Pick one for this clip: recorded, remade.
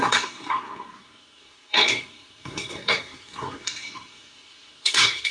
remade